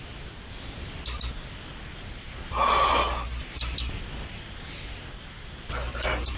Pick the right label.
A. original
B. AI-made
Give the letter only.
A